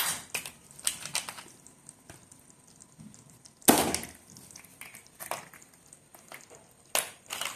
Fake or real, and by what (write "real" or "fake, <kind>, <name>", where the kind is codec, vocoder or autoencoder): real